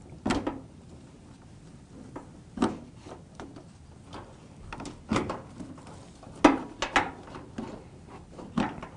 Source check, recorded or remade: recorded